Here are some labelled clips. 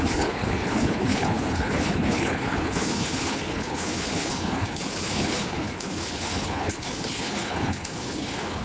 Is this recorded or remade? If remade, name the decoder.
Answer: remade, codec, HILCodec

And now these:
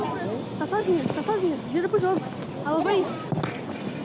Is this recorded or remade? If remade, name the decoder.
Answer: recorded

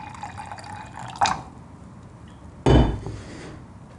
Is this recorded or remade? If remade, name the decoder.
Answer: recorded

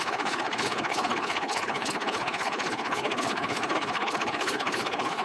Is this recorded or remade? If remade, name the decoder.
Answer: remade, codec, HILCodec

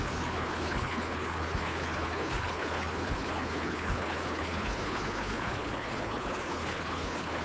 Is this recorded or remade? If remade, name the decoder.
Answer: remade, codec, HILCodec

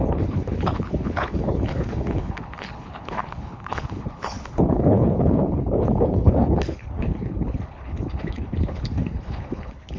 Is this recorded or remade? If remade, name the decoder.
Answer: remade, codec, HILCodec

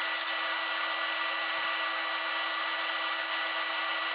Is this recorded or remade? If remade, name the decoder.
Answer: recorded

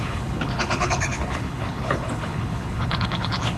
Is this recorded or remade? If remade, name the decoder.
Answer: remade, codec, HILCodec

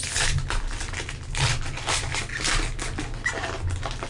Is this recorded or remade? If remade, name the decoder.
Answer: recorded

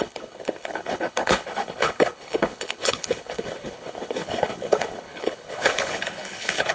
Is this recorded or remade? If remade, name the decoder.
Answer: remade, codec, HILCodec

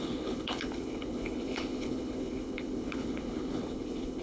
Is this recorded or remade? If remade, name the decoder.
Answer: remade, codec, HILCodec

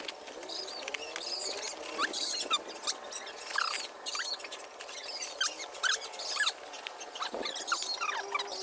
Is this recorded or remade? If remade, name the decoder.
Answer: recorded